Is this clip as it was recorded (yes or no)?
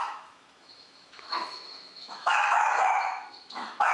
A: no